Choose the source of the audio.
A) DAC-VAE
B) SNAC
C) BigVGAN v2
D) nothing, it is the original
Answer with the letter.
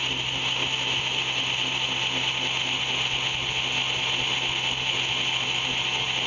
D